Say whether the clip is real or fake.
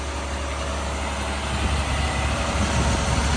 real